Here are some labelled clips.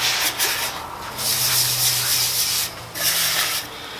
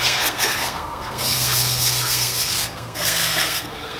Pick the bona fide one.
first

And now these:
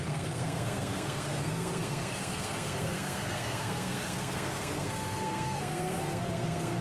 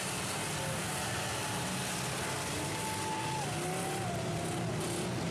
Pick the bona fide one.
second